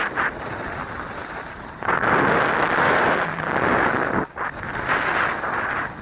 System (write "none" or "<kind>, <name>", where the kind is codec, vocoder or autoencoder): none